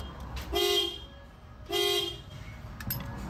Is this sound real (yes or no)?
yes